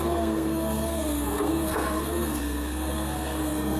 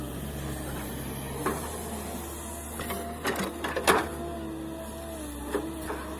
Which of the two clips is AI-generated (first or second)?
first